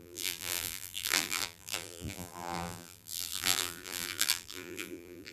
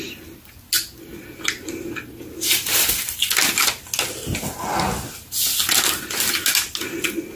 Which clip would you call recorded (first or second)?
second